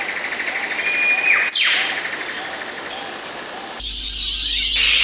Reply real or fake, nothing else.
real